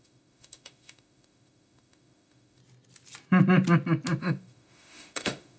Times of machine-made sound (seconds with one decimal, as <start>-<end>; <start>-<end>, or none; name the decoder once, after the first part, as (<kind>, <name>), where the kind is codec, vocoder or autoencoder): 0.0-2.6 (autoencoder, DAC-VAE); 4.2-5.6